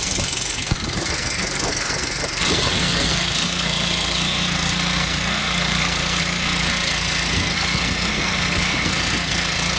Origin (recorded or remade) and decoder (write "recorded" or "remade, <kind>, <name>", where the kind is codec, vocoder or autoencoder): remade, codec, SNAC